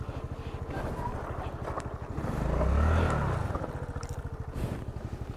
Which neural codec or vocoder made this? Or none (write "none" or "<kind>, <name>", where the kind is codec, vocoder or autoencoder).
none